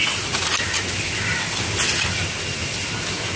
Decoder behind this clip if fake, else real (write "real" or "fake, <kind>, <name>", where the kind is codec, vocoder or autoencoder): real